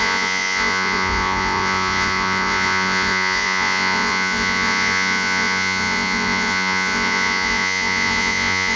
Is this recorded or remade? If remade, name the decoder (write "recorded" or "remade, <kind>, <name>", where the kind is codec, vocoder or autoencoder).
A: remade, vocoder, Vocos